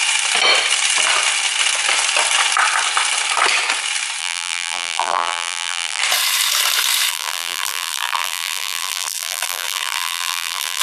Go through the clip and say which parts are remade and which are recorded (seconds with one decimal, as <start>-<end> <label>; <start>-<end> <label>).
0.0-4.2 recorded; 4.2-6.0 remade; 6.0-7.1 recorded; 7.1-10.8 remade